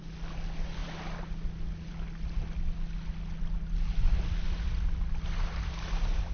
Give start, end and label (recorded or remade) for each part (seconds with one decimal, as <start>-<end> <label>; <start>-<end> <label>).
0.0-6.3 recorded